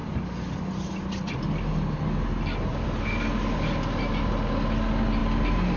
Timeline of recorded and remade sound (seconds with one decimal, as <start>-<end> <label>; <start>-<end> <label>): 0.0-5.8 recorded